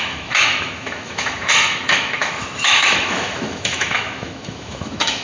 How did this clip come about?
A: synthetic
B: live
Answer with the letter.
A